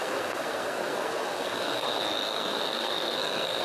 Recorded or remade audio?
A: remade